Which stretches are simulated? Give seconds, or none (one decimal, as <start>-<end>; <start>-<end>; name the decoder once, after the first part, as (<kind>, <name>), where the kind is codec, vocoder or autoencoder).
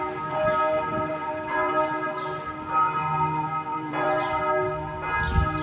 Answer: 1.1-1.7 (vocoder, BigVGAN v2); 3.7-4.4